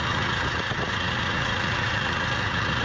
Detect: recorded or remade remade